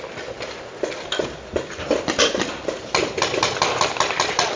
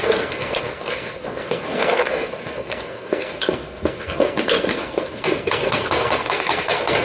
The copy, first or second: second